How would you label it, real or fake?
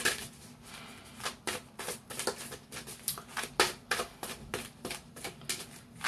real